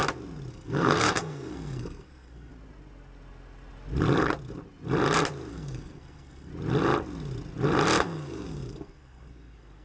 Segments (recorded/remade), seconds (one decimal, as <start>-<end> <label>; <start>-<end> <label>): 0.0-0.5 recorded; 0.5-2.5 remade; 2.5-5.5 recorded; 5.5-6.5 remade; 6.5-8.0 recorded; 8.0-9.8 remade

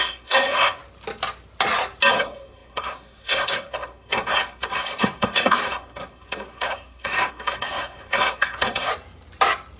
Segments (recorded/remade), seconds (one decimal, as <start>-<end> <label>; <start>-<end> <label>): 0.0-0.8 remade; 0.8-2.1 recorded; 2.1-8.9 remade; 8.9-9.8 recorded

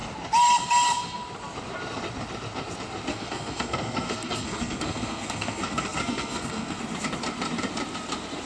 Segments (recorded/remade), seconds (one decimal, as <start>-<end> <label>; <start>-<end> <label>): 0.0-3.1 recorded; 3.1-6.8 remade; 6.8-8.5 recorded

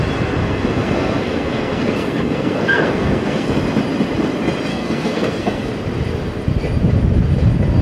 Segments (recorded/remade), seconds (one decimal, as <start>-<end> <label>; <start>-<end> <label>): 0.0-0.4 recorded; 0.4-3.6 remade; 3.6-4.7 recorded; 4.7-5.7 remade; 5.7-7.8 recorded